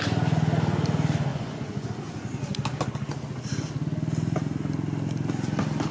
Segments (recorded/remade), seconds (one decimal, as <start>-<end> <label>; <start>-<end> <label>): 0.0-1.3 recorded; 1.3-1.9 remade; 1.9-5.9 recorded